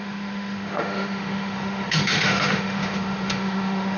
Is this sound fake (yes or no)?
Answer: yes